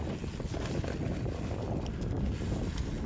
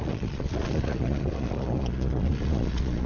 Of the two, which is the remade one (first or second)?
second